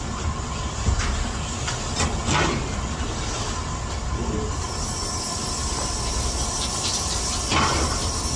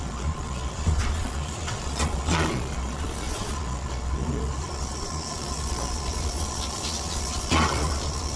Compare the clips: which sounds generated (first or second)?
second